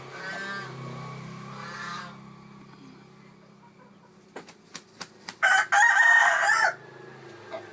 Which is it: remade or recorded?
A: recorded